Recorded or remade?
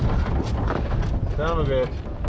recorded